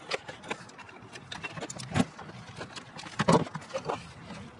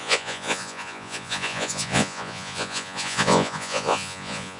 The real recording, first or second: first